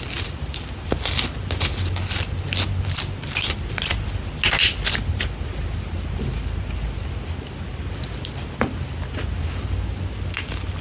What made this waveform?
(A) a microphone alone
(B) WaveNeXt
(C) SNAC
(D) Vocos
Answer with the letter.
A